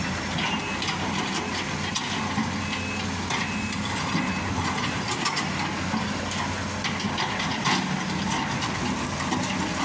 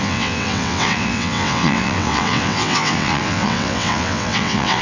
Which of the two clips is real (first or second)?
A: first